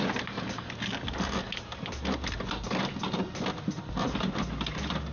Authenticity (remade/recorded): recorded